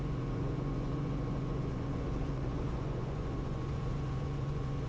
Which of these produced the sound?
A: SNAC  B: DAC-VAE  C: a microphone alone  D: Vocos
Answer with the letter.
D